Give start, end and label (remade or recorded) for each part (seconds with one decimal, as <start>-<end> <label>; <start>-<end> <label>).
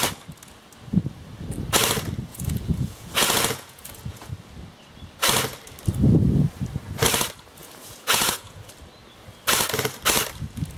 0.0-2.3 recorded; 2.3-4.3 remade; 4.3-7.6 recorded; 7.6-8.7 remade; 8.7-10.8 recorded